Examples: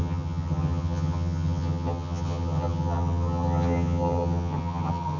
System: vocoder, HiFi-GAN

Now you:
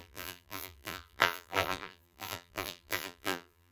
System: vocoder, BigVGAN v2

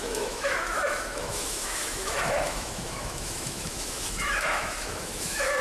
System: autoencoder, DAC-VAE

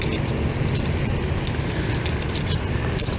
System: none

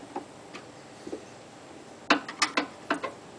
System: none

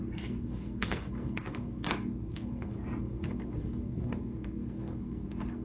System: codec, SNAC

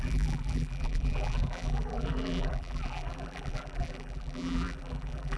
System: vocoder, BigVGAN v2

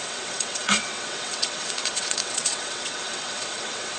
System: vocoder, WaveNeXt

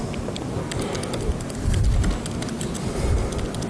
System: none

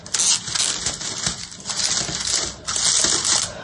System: none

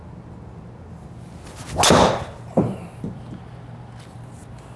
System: none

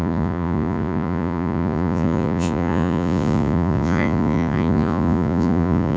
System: vocoder, Vocos